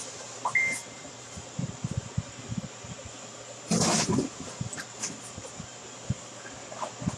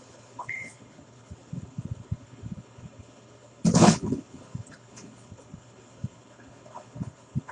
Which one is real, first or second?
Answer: first